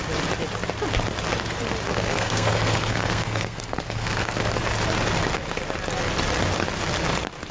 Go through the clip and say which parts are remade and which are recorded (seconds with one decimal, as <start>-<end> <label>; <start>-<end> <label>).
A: 0.0-1.9 recorded; 1.9-4.4 remade; 4.4-7.5 recorded